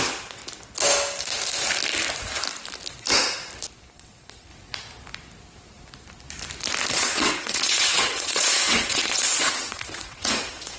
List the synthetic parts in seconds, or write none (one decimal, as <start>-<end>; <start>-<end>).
0.0-0.4; 3.9-4.5; 6.9-10.8